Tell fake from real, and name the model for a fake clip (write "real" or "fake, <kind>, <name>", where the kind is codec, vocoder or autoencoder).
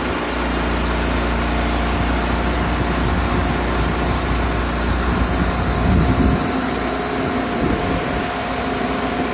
real